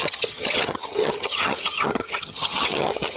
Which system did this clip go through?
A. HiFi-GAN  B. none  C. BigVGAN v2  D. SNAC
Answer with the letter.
A